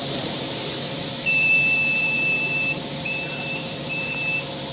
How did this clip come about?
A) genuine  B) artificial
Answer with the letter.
B